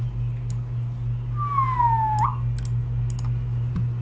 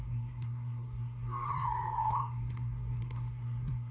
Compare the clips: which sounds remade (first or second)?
second